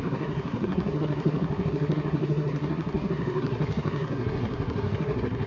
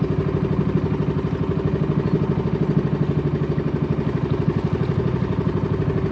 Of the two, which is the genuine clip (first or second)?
second